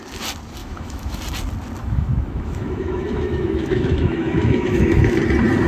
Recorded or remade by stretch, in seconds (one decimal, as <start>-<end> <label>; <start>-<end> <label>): 0.0-0.6 recorded; 0.6-1.2 remade; 1.2-1.8 recorded; 1.8-5.2 remade; 5.2-5.7 recorded